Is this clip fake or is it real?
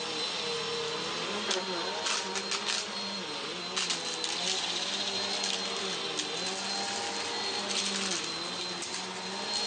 real